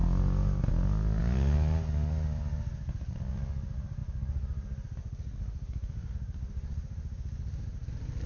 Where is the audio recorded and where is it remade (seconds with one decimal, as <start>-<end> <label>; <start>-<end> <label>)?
0.0-8.3 recorded